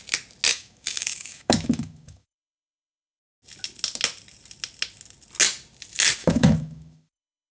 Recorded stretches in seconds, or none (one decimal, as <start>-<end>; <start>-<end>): 0.0-0.5; 3.2-6.2